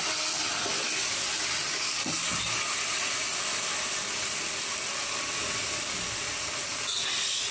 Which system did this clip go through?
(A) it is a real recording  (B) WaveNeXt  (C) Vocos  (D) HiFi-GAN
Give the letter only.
A